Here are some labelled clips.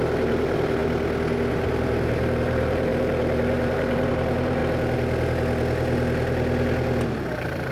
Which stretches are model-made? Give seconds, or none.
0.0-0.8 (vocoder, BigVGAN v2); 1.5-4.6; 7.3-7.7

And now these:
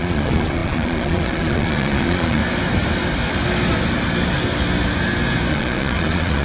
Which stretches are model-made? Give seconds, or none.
0.0-2.4 (vocoder, Vocos); 5.5-6.4

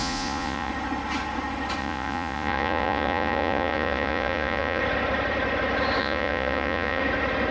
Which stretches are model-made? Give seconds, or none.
0.0-0.7 (vocoder, Vocos); 1.8-4.8; 6.0-7.0

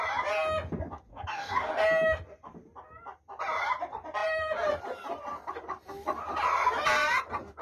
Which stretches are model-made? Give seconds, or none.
1.1-1.7 (codec, DAC)

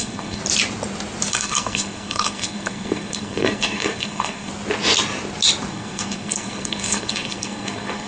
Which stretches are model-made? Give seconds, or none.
0.0-0.4 (codec, SNAC); 1.3-4.5; 5.7-8.1